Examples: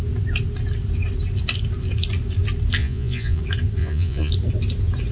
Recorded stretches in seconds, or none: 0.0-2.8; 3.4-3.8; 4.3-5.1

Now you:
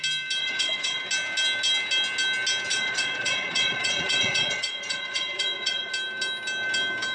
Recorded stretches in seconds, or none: 0.0-0.4; 1.0-2.7; 5.9-7.1

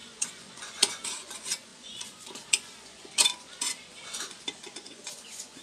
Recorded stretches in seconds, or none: none